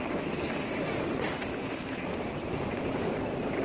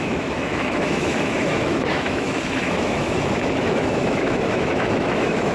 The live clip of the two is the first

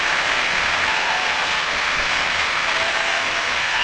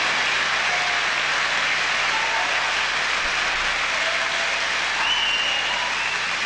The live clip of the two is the second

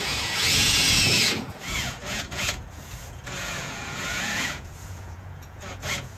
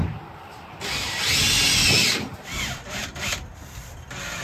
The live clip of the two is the second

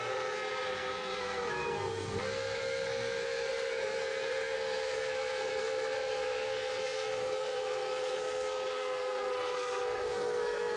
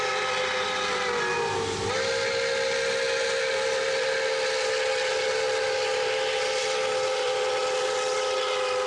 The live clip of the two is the second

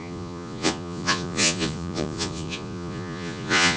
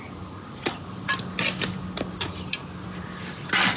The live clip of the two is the second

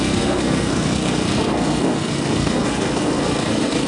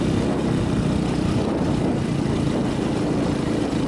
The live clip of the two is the second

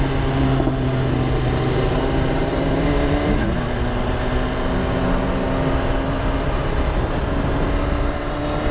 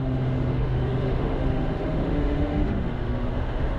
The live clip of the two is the first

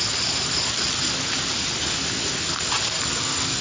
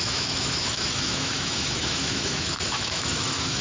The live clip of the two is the first